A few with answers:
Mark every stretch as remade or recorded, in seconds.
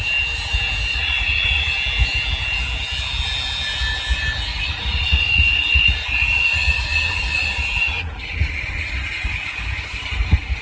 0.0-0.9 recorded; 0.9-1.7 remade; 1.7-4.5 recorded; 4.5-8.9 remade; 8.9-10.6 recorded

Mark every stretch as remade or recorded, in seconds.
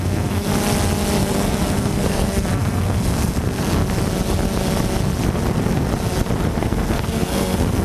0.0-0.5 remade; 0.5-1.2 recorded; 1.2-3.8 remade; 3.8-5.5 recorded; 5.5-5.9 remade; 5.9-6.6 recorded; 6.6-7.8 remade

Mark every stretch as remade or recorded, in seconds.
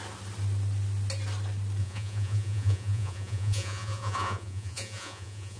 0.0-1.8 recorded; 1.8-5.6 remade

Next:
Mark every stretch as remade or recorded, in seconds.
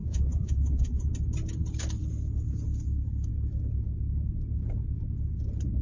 0.0-1.1 remade; 1.1-5.8 recorded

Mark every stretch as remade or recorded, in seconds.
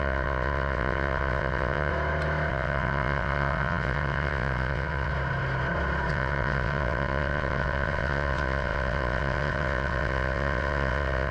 0.0-1.9 remade; 1.9-2.5 recorded; 2.5-5.1 remade; 5.1-6.1 recorded; 6.1-11.3 remade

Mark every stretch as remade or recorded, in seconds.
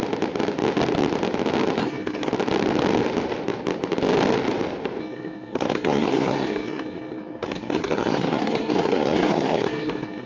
0.0-1.8 recorded; 1.8-2.3 remade; 2.3-5.0 recorded; 5.0-10.3 remade